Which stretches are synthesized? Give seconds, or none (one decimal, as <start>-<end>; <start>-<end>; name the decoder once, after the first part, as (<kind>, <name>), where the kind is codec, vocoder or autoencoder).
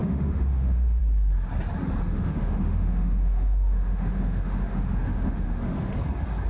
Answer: 0.0-1.0 (autoencoder, DAC-VAE); 2.1-5.9